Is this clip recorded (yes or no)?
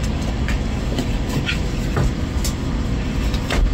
yes